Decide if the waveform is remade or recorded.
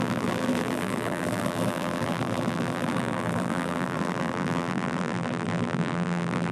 remade